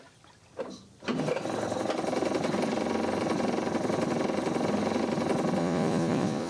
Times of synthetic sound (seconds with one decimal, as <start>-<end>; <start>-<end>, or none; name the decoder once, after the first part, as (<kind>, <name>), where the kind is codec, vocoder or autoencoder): 5.6-6.5 (vocoder, Vocos)